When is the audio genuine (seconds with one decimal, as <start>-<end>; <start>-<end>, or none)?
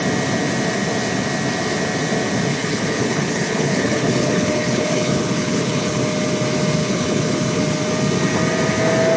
0.0-2.5; 6.0-6.8; 7.6-9.2